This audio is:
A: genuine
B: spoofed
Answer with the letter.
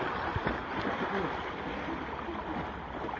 A